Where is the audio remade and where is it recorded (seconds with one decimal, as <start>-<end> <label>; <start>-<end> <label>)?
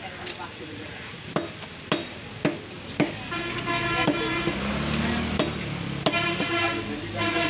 0.0-0.5 recorded; 0.5-1.3 remade; 1.3-7.5 recorded